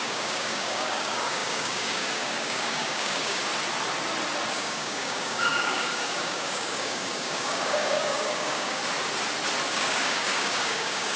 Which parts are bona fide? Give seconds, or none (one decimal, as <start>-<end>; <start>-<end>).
3.5-4.5; 8.8-9.7